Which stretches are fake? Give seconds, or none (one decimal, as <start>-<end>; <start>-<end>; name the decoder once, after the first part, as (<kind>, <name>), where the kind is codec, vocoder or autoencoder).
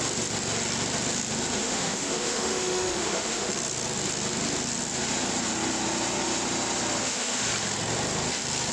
1.6-3.5 (autoencoder, DAC-VAE); 7.0-7.5